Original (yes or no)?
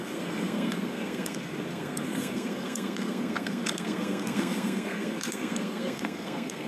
no